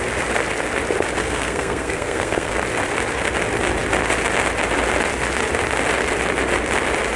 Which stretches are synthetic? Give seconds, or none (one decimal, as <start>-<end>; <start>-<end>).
1.2-2.6